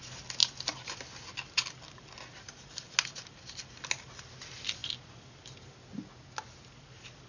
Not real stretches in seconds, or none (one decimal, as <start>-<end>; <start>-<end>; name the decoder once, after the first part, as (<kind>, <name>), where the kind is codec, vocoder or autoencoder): none